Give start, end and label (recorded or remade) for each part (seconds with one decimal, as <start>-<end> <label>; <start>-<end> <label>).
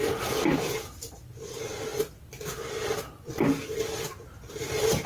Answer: 0.0-5.1 recorded